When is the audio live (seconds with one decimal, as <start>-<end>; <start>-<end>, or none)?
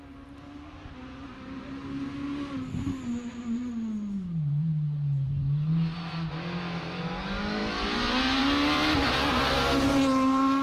0.0-10.6